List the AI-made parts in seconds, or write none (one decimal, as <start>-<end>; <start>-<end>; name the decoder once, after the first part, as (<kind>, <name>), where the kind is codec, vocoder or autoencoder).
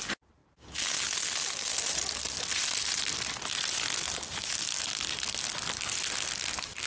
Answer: none